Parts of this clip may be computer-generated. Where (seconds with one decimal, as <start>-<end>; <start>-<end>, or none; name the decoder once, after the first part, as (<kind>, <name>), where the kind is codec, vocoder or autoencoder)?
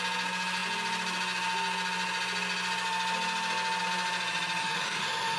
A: 4.6-5.4 (autoencoder, DAC-VAE)